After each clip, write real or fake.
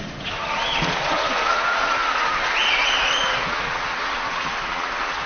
fake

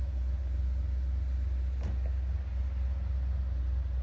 real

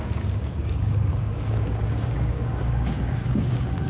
fake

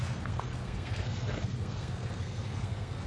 fake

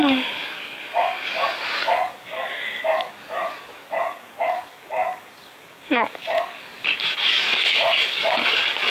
fake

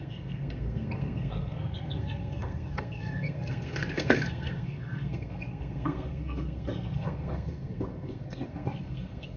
fake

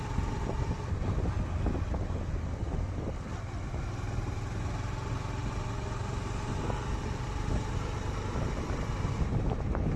real